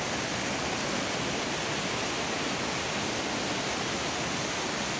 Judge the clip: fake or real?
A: real